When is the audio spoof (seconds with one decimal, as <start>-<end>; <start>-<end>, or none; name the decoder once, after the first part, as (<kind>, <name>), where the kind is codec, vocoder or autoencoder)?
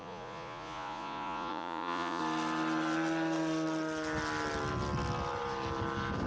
0.0-2.2 (vocoder, Vocos)